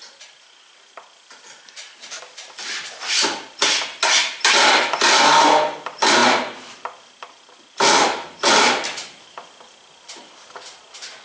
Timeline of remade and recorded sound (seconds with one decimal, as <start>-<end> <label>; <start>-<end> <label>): 0.0-11.2 recorded